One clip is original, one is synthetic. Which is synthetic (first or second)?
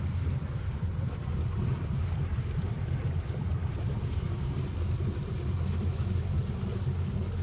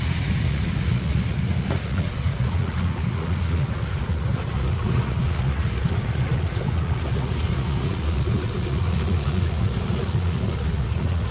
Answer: second